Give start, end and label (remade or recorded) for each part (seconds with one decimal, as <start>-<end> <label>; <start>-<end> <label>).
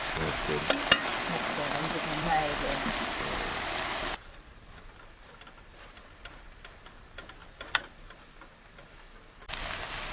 0.0-1.1 remade; 1.1-1.8 recorded; 1.8-7.4 remade; 7.4-10.1 recorded